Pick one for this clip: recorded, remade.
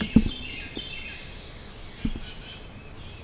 recorded